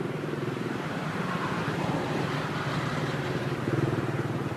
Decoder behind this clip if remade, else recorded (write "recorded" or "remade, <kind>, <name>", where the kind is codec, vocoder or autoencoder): remade, vocoder, BigVGAN v2